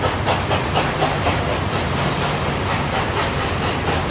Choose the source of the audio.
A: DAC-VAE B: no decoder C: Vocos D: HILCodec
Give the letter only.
B